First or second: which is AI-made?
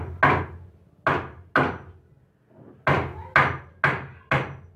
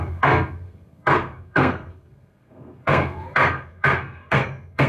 second